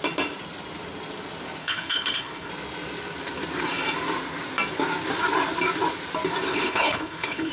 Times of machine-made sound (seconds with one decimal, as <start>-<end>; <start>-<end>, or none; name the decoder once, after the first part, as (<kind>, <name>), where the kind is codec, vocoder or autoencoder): 1.6-2.5 (codec, HILCodec); 6.5-7.5